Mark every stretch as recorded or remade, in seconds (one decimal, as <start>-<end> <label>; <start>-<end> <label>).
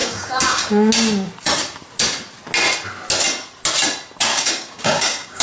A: 0.0-0.9 remade; 0.9-4.3 recorded; 4.3-5.4 remade